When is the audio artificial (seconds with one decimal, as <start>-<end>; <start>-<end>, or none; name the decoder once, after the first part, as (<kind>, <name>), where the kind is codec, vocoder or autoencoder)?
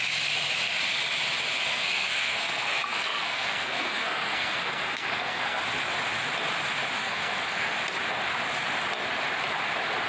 1.7-5.6 (codec, SNAC); 7.0-7.7